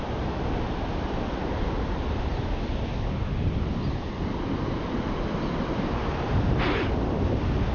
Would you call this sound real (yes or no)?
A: yes